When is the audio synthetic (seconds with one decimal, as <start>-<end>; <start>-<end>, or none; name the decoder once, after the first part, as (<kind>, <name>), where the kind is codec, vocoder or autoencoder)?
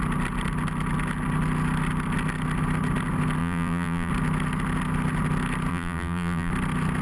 3.4-4.1 (vocoder, BigVGAN v2); 5.7-6.5